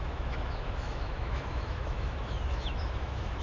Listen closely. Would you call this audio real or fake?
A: fake